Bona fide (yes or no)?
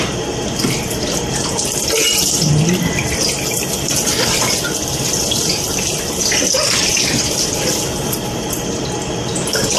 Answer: yes